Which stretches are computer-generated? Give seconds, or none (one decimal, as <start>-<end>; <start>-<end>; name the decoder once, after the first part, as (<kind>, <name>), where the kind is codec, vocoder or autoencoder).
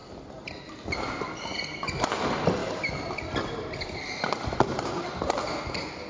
none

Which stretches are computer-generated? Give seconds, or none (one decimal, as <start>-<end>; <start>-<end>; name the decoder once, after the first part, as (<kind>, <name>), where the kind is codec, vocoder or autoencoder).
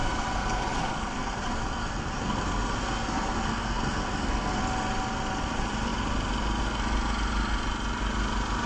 0.0-4.6 (codec, SNAC)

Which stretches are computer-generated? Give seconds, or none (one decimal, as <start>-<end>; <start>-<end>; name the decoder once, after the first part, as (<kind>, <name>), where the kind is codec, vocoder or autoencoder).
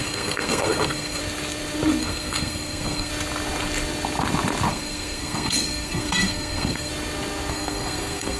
0.0-1.2 (codec, SNAC); 2.0-3.1; 4.7-6.9; 7.5-8.4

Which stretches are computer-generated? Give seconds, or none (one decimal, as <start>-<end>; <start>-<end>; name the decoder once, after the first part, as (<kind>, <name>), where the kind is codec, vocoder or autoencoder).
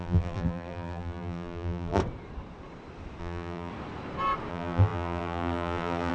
0.0-2.0 (vocoder, BigVGAN v2); 3.2-3.7; 4.5-6.1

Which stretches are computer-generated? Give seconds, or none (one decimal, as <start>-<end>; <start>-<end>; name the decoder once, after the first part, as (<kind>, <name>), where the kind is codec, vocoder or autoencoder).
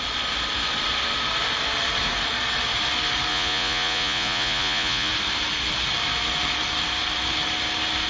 3.3-5.1 (vocoder, Vocos)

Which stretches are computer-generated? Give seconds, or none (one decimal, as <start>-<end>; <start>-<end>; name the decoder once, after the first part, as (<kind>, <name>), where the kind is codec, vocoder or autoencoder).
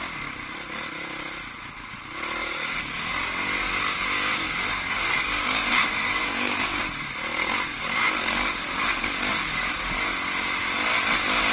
2.4-6.8 (codec, DAC); 7.7-9.0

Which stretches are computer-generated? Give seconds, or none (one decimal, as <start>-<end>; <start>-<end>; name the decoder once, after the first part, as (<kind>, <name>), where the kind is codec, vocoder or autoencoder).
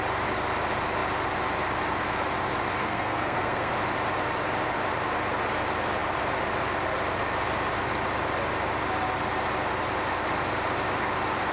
2.8-3.7 (codec, SNAC)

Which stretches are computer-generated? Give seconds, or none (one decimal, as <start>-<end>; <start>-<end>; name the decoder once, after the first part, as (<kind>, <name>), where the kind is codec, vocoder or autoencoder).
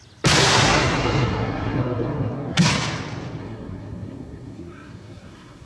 0.4-2.7 (codec, SNAC); 3.4-5.7